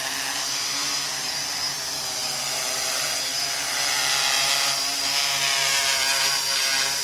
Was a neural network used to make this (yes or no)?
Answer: no